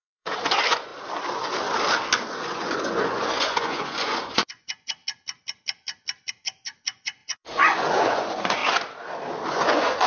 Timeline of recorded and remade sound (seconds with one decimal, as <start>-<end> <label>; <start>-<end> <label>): 0.0-0.9 remade; 0.9-2.3 recorded; 2.3-5.0 remade; 5.0-6.3 recorded; 6.3-8.6 remade; 8.6-9.5 recorded; 9.5-10.1 remade